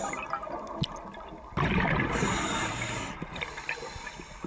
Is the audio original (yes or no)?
yes